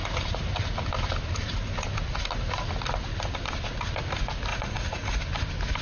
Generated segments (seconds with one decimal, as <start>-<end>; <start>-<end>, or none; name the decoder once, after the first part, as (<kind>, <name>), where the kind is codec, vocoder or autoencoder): 4.5-5.2 (vocoder, Vocos)

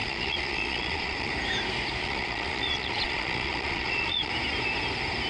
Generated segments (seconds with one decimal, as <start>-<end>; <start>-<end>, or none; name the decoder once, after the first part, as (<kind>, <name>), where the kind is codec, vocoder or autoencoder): 0.0-1.3 (vocoder, Vocos); 2.0-4.3

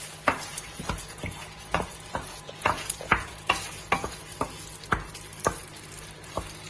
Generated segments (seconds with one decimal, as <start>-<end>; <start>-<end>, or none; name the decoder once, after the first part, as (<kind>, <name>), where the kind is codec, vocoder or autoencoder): 0.5-4.4 (vocoder, Vocos)

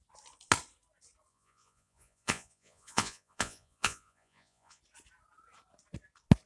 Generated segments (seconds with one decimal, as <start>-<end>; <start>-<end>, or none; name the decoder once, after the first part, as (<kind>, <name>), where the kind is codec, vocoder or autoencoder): 1.3-4.8 (vocoder, Vocos)